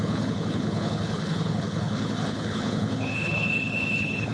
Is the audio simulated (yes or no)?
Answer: yes